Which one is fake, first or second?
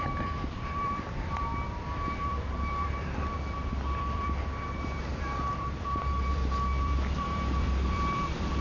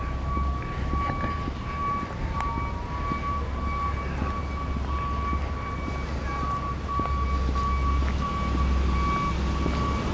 first